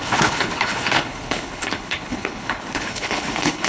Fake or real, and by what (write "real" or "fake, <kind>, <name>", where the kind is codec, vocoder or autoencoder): fake, codec, HILCodec